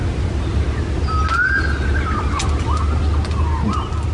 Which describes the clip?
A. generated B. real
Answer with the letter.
B